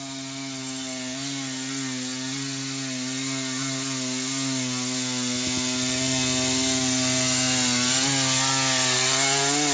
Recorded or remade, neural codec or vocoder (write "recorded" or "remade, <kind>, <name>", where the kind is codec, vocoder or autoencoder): recorded